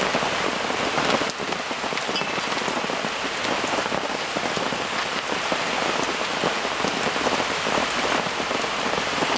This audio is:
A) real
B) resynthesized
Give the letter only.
A